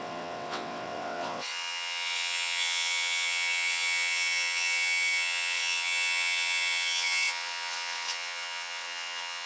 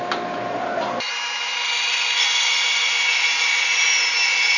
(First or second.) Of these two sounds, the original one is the second